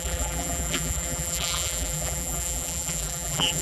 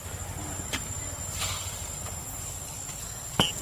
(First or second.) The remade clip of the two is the first